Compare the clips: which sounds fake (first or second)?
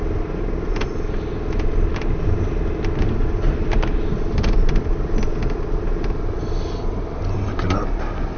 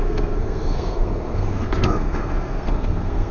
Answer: second